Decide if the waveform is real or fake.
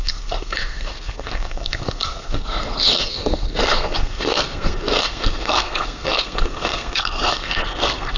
fake